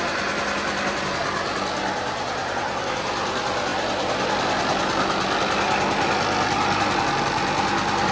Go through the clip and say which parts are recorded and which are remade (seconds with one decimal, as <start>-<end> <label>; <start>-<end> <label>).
0.0-8.1 recorded

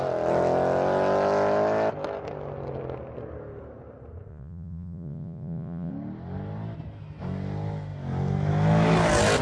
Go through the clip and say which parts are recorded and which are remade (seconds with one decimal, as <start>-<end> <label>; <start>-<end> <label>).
0.0-4.3 recorded; 4.3-5.9 remade; 5.9-9.4 recorded

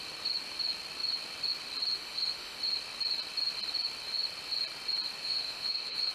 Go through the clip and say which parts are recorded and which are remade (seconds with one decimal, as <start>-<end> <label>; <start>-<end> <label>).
0.0-1.9 recorded; 1.9-2.6 remade; 2.6-5.2 recorded; 5.2-6.1 remade

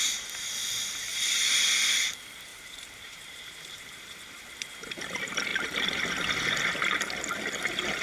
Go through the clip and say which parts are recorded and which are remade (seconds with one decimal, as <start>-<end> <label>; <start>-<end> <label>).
0.0-2.5 recorded; 2.5-4.5 remade; 4.5-8.0 recorded